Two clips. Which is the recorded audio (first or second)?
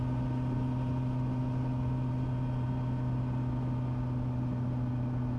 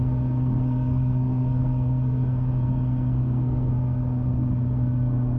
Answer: first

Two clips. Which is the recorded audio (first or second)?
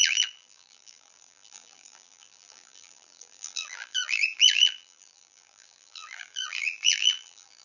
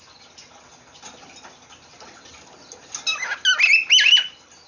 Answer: second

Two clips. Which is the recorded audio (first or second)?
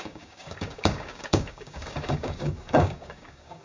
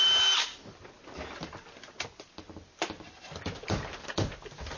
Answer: second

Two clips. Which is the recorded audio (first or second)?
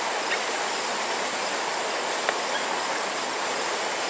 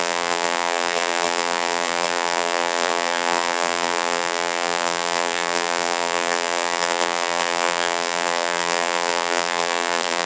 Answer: first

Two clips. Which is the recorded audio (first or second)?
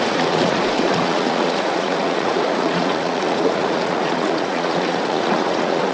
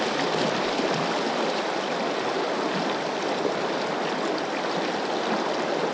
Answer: second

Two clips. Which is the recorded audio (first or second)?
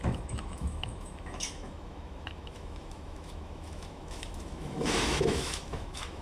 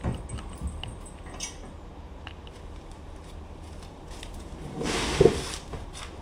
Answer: second